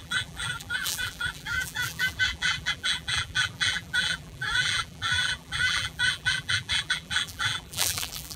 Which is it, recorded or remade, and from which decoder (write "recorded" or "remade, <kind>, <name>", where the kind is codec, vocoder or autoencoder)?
remade, vocoder, BigVGAN v2